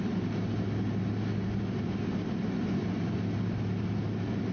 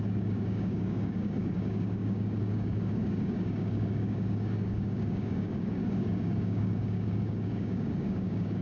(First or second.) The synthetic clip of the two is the second